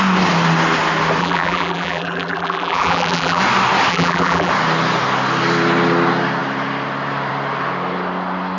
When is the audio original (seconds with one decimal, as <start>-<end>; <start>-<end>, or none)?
0.0-1.2; 3.4-3.9; 4.5-8.6